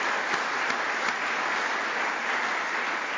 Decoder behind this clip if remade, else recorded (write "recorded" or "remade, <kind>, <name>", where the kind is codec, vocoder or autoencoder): recorded